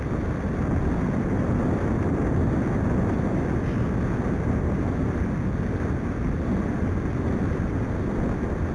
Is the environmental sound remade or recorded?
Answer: recorded